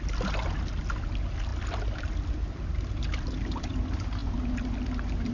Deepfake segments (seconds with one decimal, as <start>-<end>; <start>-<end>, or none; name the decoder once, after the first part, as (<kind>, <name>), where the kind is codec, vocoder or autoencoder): none